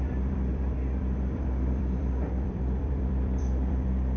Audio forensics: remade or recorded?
remade